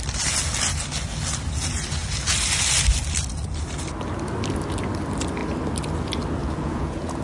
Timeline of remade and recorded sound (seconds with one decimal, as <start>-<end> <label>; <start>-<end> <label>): 0.0-6.4 recorded; 6.4-7.2 remade